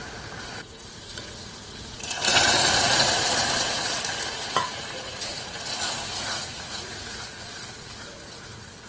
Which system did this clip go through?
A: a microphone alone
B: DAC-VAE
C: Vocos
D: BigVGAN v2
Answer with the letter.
C